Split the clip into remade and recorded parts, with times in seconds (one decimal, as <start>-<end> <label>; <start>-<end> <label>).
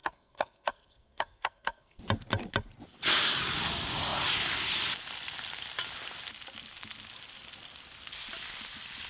0.0-2.0 remade; 2.0-9.1 recorded